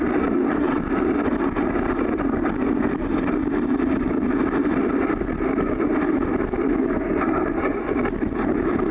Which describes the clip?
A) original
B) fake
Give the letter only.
B